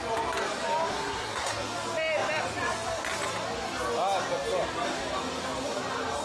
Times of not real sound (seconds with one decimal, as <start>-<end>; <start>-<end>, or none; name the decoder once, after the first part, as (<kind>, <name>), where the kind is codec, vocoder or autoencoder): 0.9-1.5 (codec, SNAC)